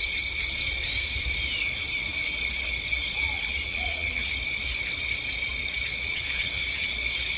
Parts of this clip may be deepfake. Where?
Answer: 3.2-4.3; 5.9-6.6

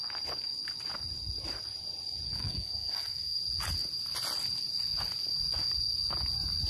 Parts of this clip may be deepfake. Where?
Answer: 2.4-3.4

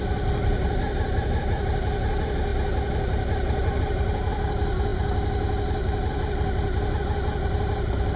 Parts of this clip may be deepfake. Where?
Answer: none

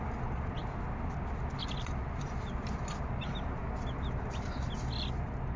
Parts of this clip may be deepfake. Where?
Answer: none

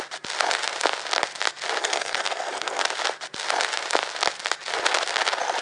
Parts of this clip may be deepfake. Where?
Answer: 1.8-2.8